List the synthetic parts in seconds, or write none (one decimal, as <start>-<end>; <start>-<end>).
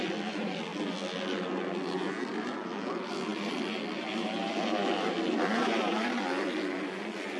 0.0-0.7; 2.1-7.4